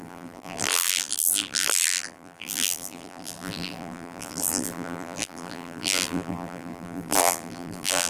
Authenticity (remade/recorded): remade